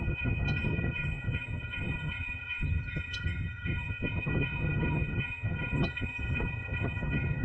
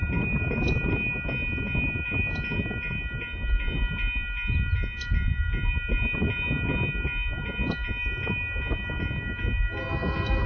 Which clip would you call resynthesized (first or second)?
first